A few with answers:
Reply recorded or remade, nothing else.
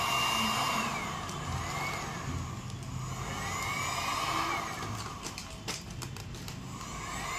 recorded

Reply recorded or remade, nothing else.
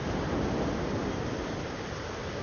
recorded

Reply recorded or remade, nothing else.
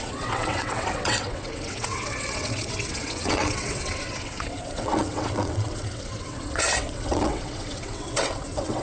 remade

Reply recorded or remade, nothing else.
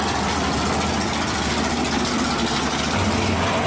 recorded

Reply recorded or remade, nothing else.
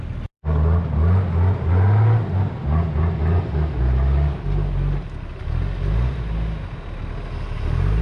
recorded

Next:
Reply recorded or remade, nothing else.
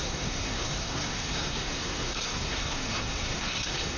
remade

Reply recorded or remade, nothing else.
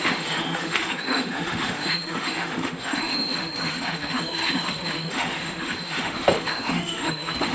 remade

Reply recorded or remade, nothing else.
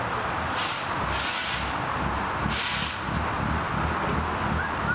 recorded